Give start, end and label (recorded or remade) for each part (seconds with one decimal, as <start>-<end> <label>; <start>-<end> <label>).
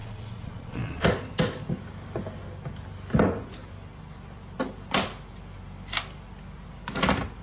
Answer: 0.0-1.0 remade; 1.0-7.4 recorded